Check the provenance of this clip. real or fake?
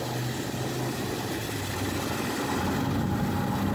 real